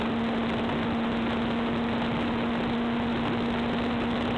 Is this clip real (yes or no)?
yes